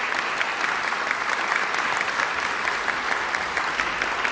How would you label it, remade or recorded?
recorded